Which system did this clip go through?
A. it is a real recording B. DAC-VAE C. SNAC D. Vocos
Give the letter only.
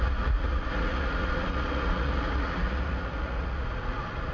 D